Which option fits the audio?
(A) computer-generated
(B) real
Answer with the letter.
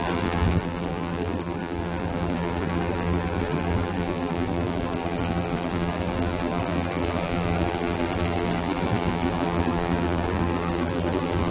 A